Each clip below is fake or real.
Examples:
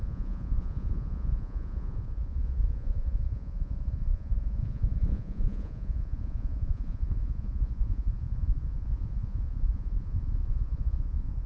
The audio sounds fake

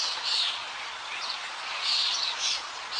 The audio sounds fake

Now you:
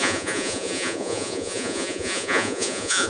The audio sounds fake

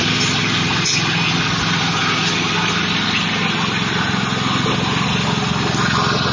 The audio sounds real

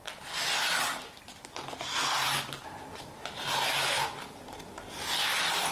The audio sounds real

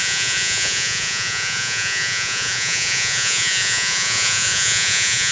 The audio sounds fake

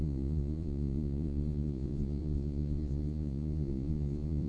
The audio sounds fake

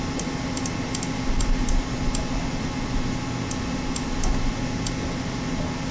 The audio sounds real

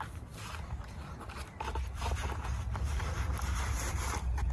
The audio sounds real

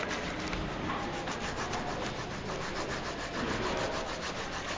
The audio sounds real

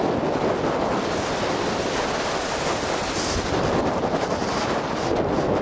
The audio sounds real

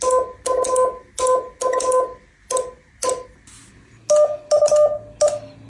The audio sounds real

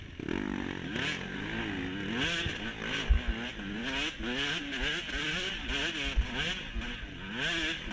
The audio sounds real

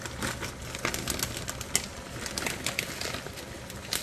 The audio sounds real